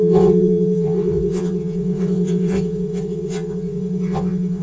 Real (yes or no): no